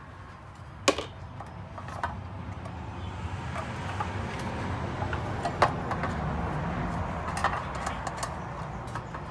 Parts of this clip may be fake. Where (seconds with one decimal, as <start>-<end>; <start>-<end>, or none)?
none